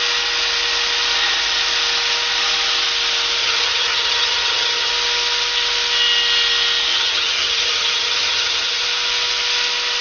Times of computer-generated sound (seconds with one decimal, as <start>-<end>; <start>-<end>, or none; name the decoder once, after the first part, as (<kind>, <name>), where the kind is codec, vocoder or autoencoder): 3.4-4.9 (vocoder, HiFi-GAN); 6.9-8.8